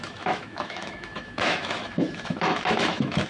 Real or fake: fake